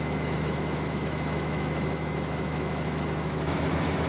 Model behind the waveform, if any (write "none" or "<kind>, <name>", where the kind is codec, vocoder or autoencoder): autoencoder, DAC-VAE